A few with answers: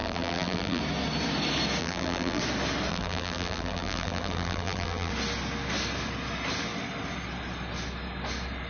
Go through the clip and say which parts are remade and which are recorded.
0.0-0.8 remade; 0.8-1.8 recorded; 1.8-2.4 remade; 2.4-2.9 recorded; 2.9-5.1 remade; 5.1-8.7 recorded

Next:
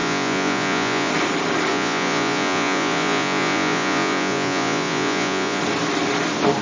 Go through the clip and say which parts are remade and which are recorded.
0.0-1.1 remade; 1.1-1.7 recorded; 1.7-5.6 remade; 5.6-6.6 recorded